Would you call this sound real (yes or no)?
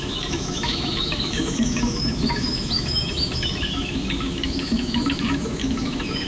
no